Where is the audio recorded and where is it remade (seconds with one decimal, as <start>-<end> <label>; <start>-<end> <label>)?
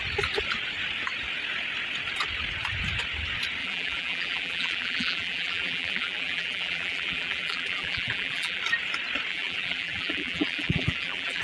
0.0-3.6 recorded; 3.6-8.6 remade; 8.6-9.3 recorded; 9.3-11.4 remade